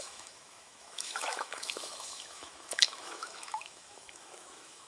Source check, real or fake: fake